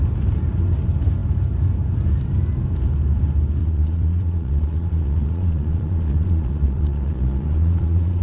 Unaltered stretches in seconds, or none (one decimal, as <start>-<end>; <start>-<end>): 0.0-3.6